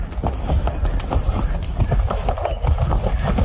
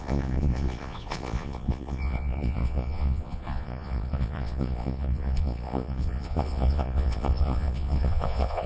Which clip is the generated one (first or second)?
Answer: second